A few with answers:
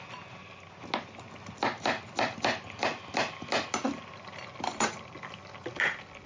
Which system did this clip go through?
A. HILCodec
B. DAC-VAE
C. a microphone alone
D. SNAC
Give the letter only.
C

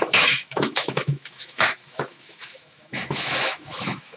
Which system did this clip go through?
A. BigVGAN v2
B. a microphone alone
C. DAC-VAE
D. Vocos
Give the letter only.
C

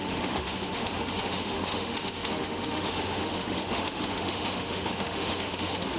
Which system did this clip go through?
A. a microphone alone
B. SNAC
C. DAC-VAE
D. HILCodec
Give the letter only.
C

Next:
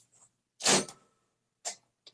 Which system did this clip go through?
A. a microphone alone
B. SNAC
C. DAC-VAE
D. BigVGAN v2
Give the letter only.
A